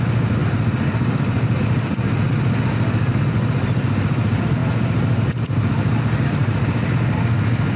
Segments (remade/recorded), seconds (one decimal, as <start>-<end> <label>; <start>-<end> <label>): 0.0-7.8 recorded